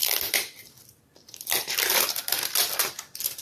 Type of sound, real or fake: fake